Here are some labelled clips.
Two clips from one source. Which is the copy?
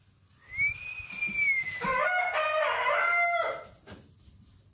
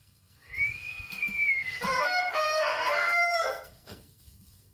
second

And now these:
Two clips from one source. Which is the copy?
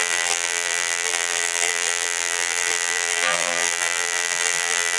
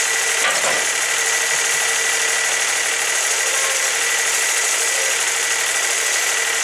first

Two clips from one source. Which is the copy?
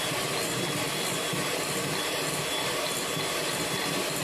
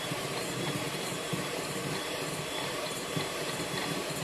second